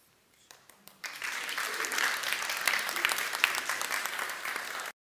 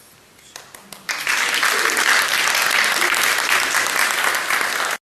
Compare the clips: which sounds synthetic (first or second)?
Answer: first